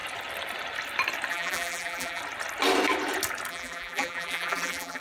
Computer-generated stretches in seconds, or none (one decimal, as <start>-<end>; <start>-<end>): 1.3-2.2; 3.5-5.0